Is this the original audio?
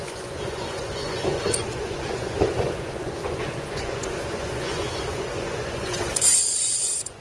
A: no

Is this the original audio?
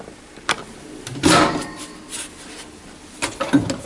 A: yes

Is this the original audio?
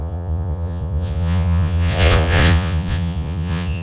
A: no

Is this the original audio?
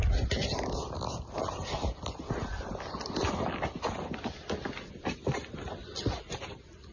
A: yes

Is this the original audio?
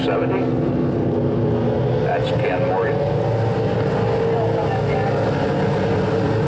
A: yes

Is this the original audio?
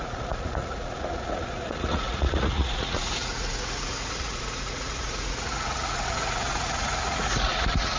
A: no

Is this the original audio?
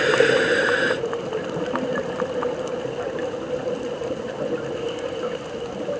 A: yes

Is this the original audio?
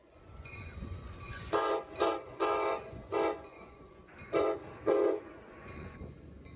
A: no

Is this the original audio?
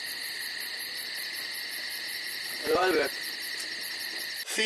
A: yes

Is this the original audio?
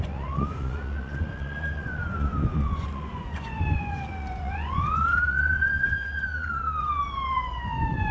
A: no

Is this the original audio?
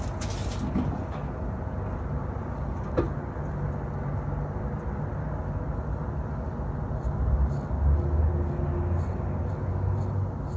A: yes